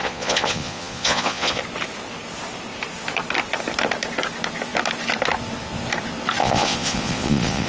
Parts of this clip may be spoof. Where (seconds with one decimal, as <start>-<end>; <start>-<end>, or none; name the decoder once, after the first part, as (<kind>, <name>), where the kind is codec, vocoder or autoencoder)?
0.0-1.6 (vocoder, Vocos); 6.4-7.7